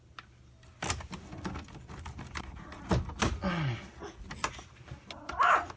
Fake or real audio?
real